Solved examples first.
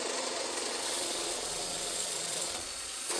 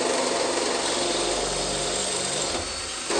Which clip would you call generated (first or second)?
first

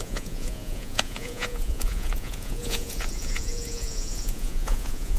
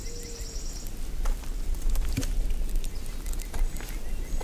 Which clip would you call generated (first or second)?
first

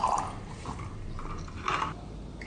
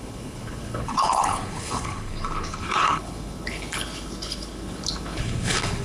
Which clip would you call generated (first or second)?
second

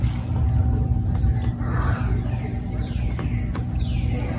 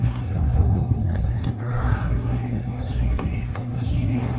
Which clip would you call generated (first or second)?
second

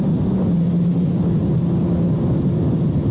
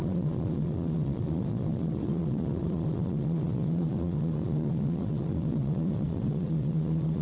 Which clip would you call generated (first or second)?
second